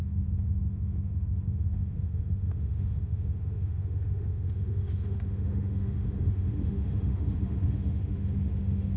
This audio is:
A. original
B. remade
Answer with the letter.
B